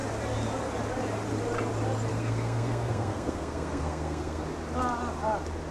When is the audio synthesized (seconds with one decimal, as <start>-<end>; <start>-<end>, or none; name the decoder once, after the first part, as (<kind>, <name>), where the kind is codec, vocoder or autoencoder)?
2.1-4.4 (codec, SNAC)